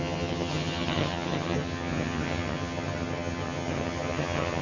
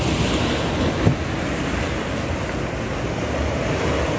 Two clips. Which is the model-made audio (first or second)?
first